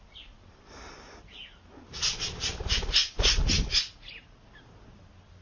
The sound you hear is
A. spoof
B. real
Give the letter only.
B